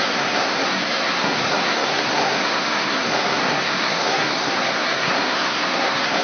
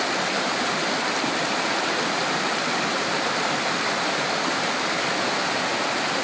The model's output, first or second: first